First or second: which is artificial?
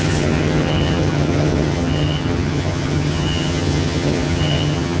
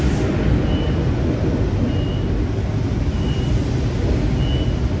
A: first